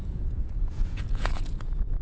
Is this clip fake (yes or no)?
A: yes